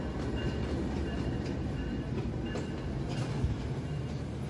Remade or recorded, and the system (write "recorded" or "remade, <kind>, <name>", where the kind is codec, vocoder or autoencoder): recorded